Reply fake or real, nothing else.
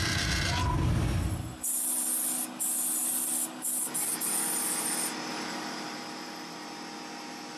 real